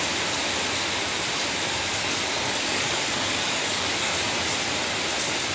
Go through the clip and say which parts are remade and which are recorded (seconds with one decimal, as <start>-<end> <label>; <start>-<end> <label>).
0.0-2.0 recorded; 2.0-4.1 remade; 4.1-5.5 recorded